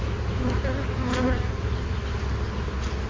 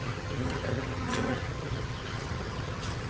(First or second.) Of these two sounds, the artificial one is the second